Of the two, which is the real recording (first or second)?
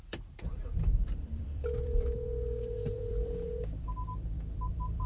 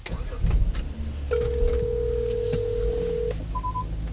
second